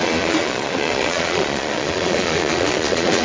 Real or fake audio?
fake